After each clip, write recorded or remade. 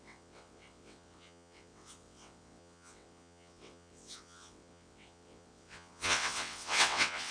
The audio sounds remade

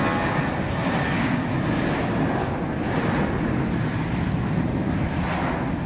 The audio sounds recorded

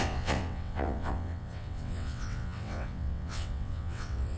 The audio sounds remade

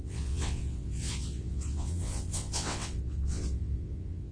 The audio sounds remade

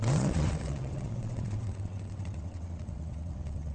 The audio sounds remade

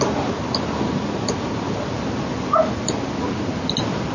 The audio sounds recorded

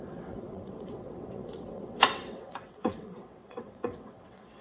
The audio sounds remade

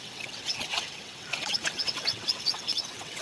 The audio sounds remade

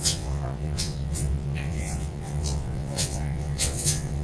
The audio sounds remade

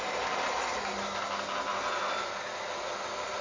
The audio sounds recorded